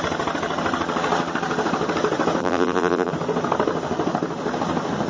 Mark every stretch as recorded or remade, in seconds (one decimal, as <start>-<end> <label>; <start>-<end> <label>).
0.0-2.4 recorded; 2.4-3.1 remade; 3.1-5.1 recorded